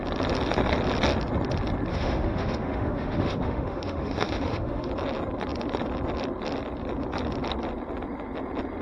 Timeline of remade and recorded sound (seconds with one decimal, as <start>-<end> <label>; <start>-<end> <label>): 0.0-1.9 recorded; 1.9-4.9 remade; 4.9-8.8 recorded